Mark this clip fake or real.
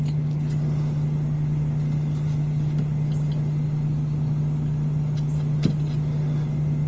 real